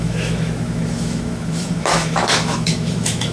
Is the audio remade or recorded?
remade